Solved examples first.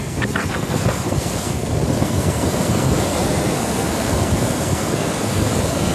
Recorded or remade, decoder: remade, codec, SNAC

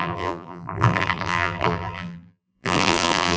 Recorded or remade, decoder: remade, vocoder, BigVGAN v2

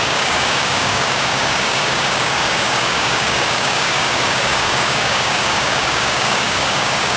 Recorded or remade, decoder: remade, codec, DAC